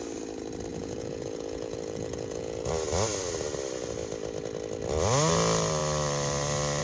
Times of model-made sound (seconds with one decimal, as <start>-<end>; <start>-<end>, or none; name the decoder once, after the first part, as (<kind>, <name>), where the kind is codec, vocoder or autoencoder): 0.7-2.7 (vocoder, Vocos)